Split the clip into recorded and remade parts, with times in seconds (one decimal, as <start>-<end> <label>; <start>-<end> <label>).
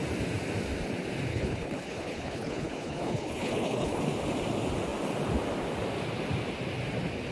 0.0-1.3 recorded; 1.3-4.0 remade; 4.0-7.3 recorded